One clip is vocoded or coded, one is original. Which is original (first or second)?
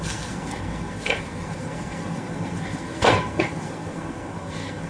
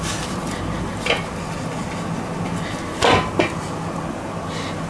second